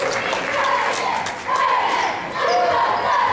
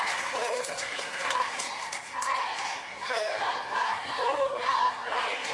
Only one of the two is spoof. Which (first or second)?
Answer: second